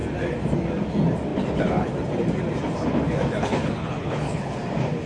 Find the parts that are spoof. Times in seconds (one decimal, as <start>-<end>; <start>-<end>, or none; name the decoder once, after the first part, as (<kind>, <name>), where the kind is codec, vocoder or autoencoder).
3.4-4.6 (codec, HILCodec)